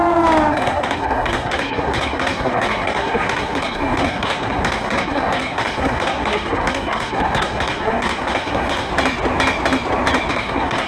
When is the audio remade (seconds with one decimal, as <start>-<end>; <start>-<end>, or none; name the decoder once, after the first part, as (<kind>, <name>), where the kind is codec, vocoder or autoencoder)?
0.5-8.9 (codec, SNAC); 10.3-10.9